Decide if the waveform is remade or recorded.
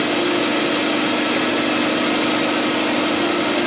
recorded